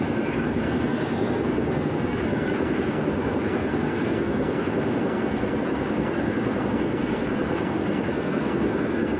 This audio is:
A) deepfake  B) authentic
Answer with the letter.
A